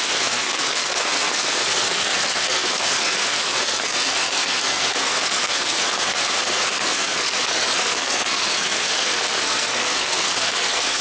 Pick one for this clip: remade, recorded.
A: remade